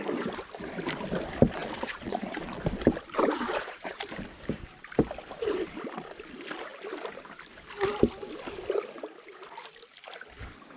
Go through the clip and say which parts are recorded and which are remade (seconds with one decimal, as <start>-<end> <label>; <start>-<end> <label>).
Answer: 0.0-1.6 recorded; 1.6-2.6 remade; 2.6-3.5 recorded; 3.5-4.0 remade; 4.0-10.8 recorded